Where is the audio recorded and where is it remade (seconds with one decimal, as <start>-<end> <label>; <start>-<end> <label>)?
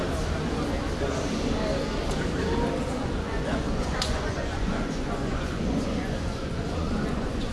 0.0-3.0 recorded; 3.0-7.5 remade